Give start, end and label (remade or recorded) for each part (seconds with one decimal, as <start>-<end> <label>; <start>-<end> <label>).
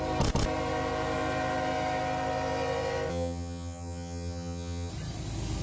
0.0-3.1 recorded; 3.1-4.9 remade; 4.9-5.6 recorded